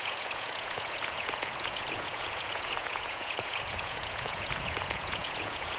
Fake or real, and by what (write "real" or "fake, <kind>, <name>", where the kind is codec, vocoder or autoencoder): fake, vocoder, Vocos